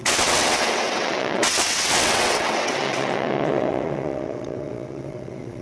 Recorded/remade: remade